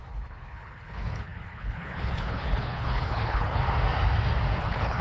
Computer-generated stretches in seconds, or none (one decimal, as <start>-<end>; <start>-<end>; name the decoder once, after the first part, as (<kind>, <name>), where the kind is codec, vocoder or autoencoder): 0.0-3.6 (codec, HILCodec); 4.6-5.0